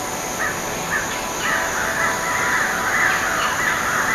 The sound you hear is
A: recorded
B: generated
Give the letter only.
A